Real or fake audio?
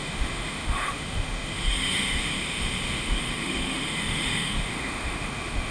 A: fake